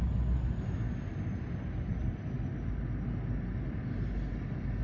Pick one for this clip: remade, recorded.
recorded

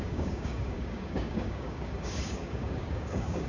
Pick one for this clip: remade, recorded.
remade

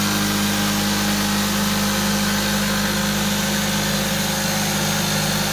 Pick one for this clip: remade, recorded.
recorded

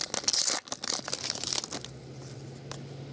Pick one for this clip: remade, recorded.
recorded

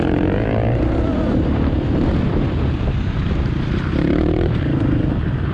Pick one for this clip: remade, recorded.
remade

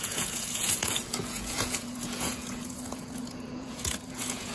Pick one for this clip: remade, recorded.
remade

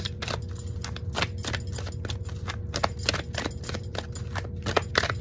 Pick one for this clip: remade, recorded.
recorded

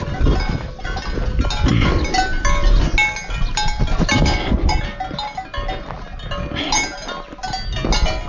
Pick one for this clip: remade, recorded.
recorded